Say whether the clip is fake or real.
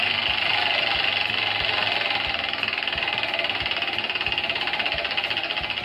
real